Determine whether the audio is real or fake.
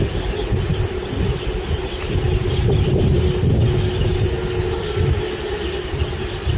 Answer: real